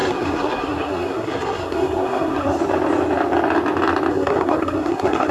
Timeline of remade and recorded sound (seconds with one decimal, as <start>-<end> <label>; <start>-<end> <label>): 0.0-2.6 remade; 2.6-4.1 recorded; 4.1-5.3 remade